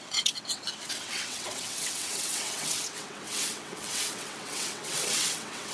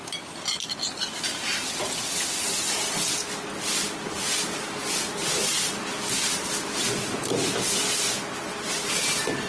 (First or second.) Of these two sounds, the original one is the second